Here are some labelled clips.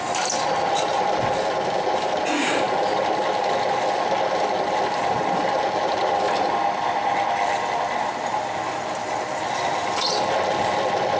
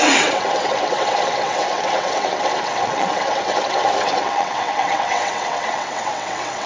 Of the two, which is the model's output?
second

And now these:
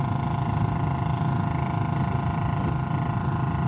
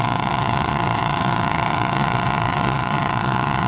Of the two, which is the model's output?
second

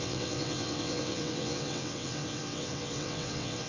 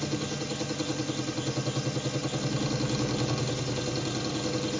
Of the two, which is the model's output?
first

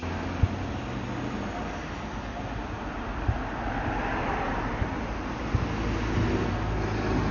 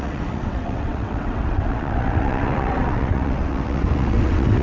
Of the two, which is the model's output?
second